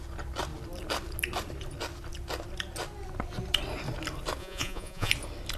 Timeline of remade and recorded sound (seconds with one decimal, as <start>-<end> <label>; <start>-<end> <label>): 0.0-4.4 recorded; 4.4-5.1 remade; 5.1-5.6 recorded